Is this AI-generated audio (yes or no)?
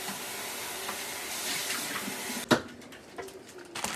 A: no